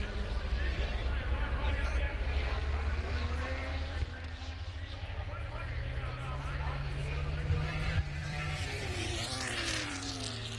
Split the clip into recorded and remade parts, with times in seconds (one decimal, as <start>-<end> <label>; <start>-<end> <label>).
0.0-0.6 recorded; 0.6-1.4 remade; 1.4-8.2 recorded; 8.2-10.0 remade; 10.0-10.6 recorded